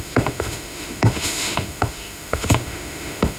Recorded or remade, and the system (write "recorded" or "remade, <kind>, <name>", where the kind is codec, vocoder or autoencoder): remade, autoencoder, DAC-VAE